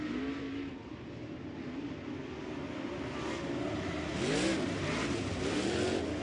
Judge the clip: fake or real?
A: real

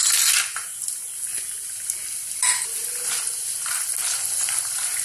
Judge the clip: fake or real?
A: real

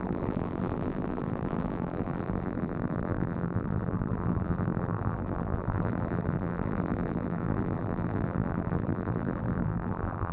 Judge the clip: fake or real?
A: fake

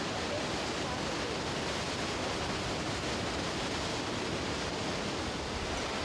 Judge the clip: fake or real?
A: real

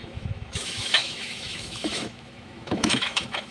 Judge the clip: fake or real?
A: fake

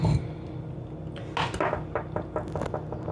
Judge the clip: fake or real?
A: real